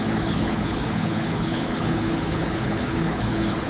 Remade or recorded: remade